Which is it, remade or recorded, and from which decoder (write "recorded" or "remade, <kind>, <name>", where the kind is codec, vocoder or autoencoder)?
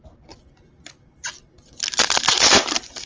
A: recorded